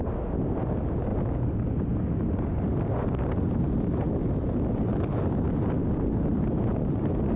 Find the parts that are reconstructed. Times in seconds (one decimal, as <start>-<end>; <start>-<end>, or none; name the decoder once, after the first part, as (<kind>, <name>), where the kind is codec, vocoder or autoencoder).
none